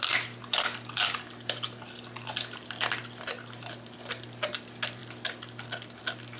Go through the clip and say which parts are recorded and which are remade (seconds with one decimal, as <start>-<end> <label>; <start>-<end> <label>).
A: 0.0-6.4 recorded